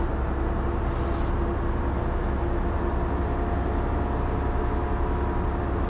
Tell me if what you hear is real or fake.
real